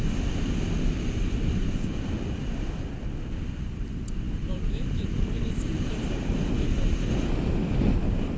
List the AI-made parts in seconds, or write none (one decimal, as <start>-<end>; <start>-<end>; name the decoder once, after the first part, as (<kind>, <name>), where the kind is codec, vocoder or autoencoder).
4.4-6.4 (vocoder, BigVGAN v2)